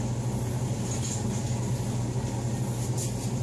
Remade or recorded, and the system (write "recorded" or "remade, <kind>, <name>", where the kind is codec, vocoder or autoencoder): recorded